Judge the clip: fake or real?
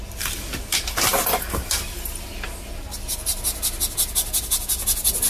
real